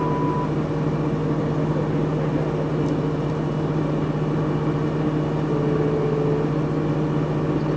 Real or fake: real